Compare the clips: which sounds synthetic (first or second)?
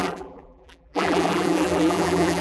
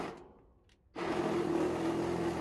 first